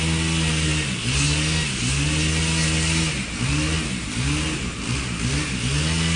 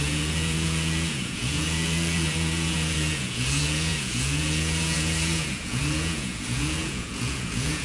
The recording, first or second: first